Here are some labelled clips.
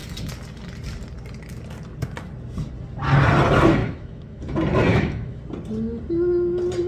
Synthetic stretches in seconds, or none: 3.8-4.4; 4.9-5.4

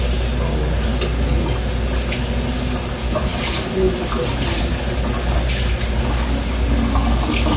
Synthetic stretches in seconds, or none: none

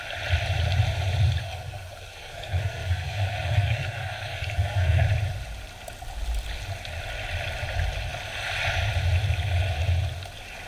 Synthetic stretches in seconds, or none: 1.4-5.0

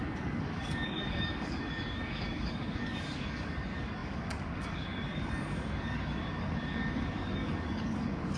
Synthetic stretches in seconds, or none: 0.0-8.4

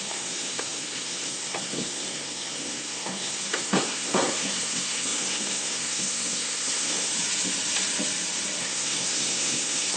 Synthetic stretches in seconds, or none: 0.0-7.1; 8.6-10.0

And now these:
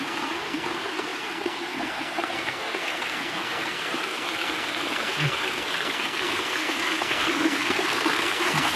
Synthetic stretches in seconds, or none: 0.0-8.8

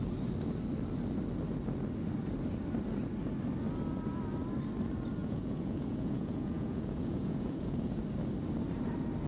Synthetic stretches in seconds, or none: 5.2-8.0